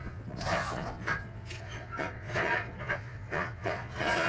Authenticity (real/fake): fake